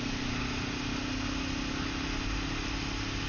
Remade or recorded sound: recorded